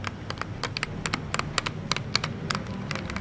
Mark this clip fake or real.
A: real